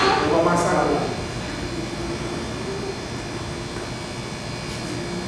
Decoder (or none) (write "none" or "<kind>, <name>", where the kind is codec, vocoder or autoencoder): none